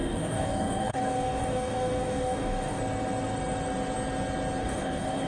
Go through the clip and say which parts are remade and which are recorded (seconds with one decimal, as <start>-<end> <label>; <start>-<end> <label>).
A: 0.0-2.8 remade; 2.8-4.6 recorded; 4.6-5.3 remade